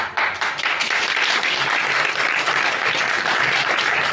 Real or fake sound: real